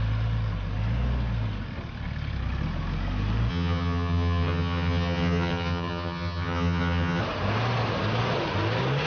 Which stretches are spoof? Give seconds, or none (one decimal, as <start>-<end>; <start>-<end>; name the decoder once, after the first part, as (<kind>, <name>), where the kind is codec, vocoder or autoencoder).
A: 3.5-7.2 (vocoder, HiFi-GAN)